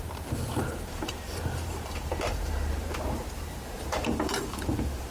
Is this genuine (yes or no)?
no